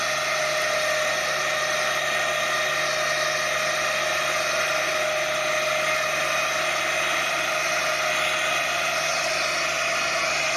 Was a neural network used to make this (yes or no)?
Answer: no